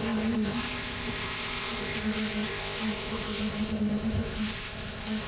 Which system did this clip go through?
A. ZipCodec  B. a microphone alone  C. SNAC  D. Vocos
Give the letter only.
A